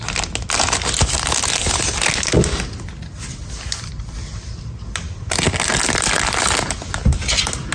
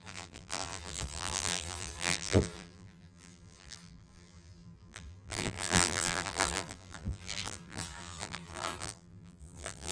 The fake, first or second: second